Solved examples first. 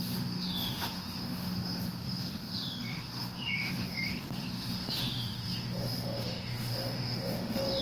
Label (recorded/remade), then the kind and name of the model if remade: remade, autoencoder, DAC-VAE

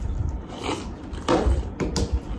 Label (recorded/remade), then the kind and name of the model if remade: remade, vocoder, BigVGAN v2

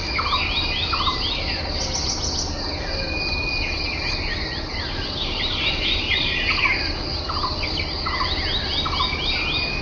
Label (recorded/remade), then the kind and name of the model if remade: recorded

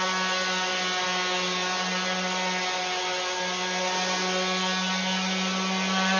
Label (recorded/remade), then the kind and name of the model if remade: recorded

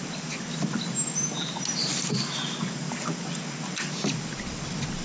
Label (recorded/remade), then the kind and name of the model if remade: recorded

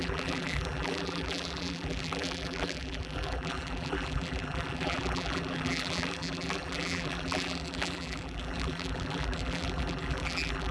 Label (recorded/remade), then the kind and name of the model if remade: remade, vocoder, BigVGAN v2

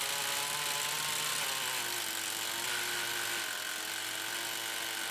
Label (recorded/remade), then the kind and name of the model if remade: recorded